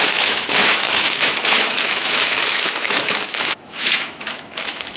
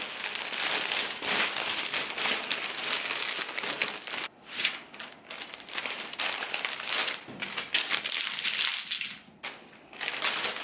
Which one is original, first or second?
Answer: second